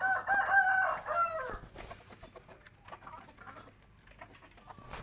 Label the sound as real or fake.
real